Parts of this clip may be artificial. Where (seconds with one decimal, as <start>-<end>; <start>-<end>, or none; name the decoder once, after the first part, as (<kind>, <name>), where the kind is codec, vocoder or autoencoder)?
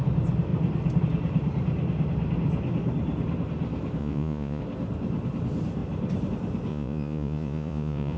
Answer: 4.0-4.6 (vocoder, Vocos); 6.7-8.2